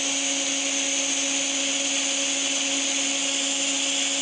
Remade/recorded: recorded